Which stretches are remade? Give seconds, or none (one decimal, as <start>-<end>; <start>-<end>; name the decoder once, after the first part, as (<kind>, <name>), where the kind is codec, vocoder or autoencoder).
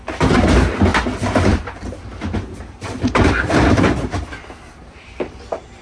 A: 0.9-3.8 (vocoder, BigVGAN v2)